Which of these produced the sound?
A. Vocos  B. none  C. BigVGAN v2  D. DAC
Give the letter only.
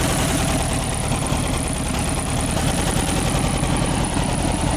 C